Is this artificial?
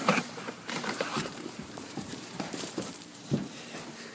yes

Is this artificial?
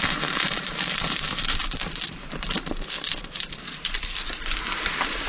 yes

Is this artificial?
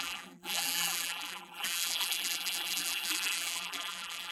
yes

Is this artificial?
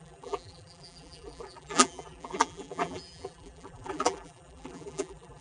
yes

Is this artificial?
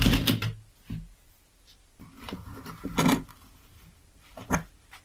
no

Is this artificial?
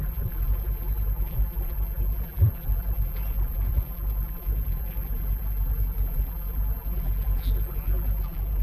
yes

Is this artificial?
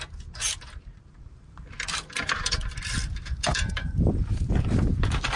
yes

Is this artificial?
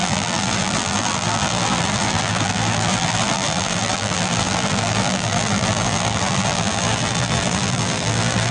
yes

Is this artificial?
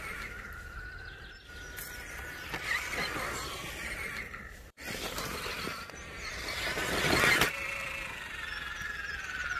no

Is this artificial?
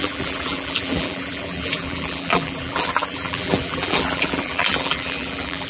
yes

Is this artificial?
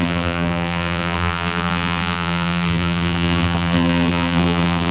yes